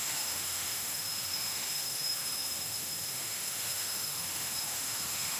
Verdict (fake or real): fake